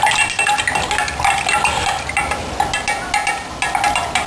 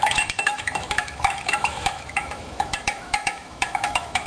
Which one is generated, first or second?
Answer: second